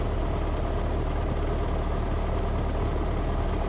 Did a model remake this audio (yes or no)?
no